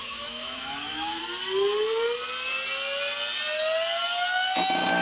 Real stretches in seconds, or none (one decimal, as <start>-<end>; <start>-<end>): 1.2-5.0